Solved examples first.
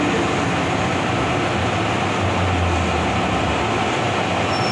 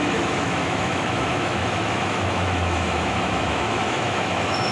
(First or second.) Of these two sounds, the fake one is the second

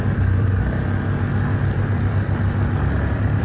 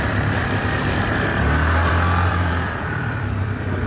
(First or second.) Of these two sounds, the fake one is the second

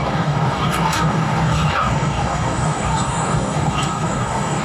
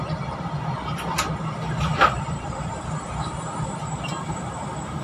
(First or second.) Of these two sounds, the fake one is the first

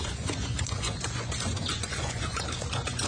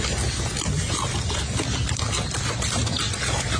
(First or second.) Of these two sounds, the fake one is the first